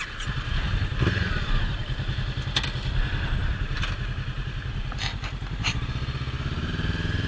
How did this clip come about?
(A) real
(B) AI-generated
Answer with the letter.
A